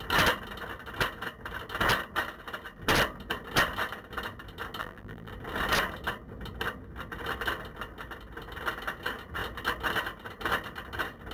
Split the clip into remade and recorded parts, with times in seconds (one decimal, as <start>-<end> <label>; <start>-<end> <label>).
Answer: 0.0-4.8 recorded; 4.8-5.3 remade; 5.3-11.3 recorded